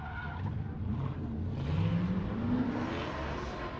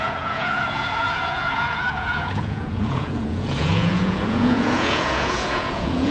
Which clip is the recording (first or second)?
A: first